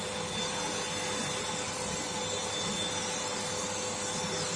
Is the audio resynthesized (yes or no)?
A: no